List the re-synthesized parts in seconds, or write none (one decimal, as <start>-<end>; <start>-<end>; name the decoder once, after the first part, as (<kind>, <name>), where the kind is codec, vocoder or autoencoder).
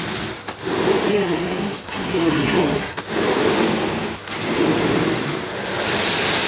1.1-3.0 (codec, SNAC)